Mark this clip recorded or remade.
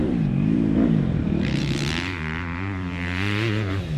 remade